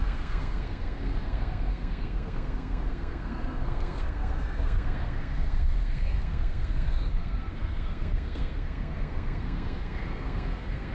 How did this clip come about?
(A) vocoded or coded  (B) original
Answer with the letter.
A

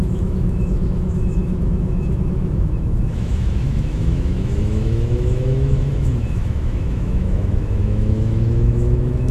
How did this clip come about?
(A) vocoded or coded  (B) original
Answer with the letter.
A